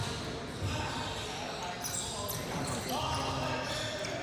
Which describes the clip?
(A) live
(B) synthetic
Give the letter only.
A